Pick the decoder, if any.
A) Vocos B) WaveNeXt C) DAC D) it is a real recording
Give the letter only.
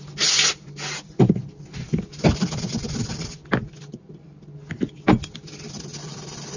D